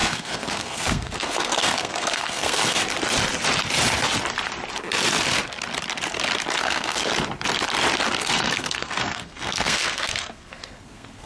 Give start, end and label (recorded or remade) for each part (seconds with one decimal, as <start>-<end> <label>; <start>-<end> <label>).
0.0-2.8 remade; 2.8-6.6 recorded; 6.6-7.1 remade; 7.1-8.2 recorded; 8.2-11.3 remade